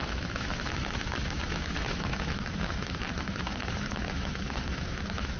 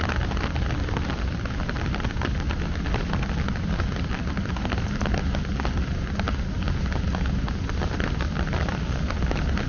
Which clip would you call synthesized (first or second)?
first